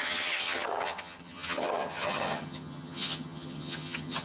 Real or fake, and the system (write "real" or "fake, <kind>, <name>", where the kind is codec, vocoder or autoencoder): fake, vocoder, HiFi-GAN